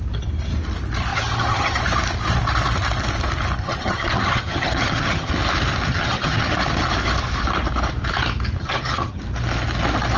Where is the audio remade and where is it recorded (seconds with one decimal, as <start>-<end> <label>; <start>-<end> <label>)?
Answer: 0.0-1.1 recorded; 1.1-1.8 remade; 1.8-3.6 recorded; 3.6-5.3 remade; 5.3-5.9 recorded; 5.9-6.5 remade; 6.5-8.6 recorded; 8.6-9.2 remade; 9.2-10.2 recorded